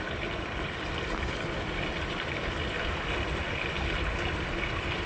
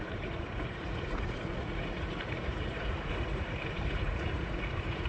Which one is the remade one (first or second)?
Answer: second